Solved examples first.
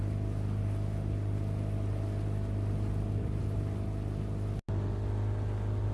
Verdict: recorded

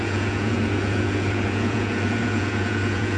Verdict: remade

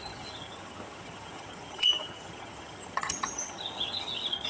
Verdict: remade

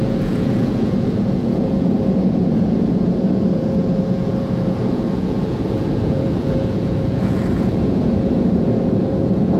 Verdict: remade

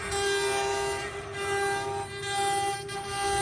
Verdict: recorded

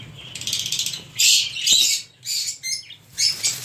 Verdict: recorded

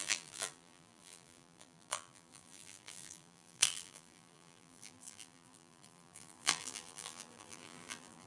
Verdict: remade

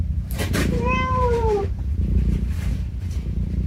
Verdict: remade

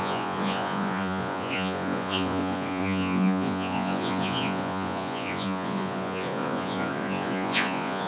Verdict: remade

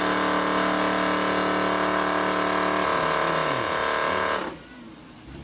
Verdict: recorded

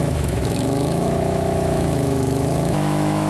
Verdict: remade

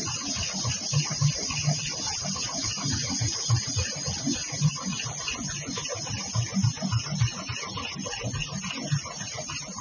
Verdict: recorded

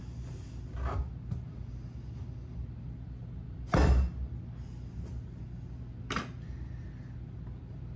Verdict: recorded